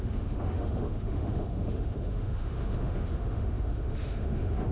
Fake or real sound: fake